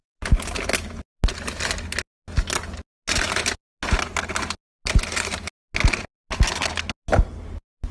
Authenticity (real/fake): real